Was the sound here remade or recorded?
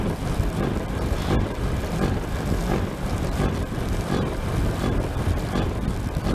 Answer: remade